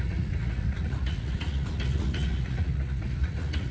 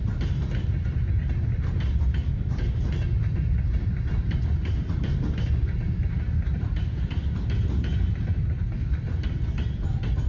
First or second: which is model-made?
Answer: first